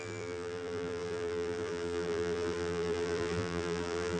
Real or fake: fake